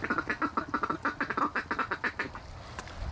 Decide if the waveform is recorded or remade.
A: recorded